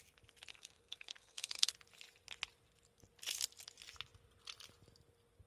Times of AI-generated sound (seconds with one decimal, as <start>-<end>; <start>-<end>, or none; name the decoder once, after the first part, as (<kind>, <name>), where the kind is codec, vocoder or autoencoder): 0.5-1.7 (codec, SNAC)